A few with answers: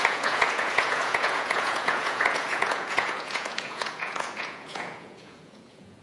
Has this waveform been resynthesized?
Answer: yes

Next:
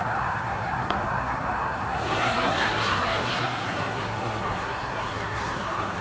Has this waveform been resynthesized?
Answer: yes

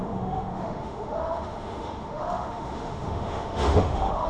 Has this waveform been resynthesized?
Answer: yes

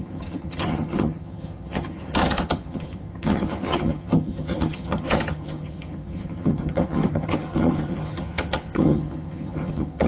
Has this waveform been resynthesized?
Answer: yes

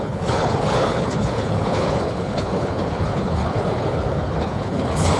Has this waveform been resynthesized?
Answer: yes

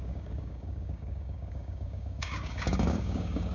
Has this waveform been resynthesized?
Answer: yes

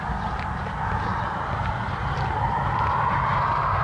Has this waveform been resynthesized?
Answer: no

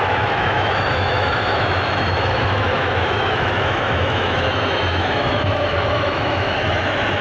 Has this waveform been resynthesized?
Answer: yes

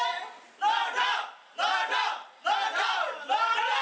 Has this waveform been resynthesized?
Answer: no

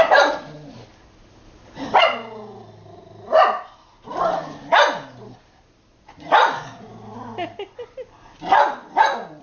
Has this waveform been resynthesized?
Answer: no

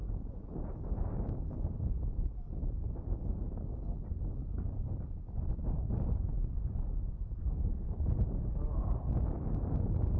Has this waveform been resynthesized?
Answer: no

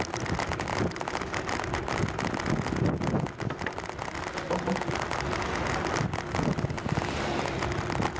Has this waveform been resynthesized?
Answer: no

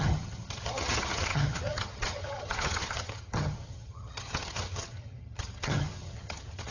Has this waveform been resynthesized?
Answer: yes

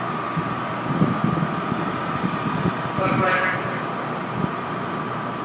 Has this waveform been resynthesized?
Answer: no